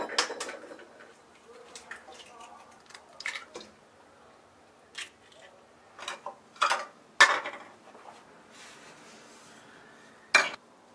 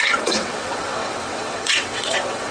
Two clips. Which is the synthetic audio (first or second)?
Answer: second